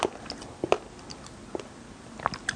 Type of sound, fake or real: real